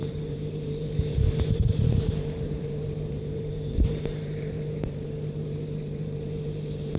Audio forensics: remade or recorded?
remade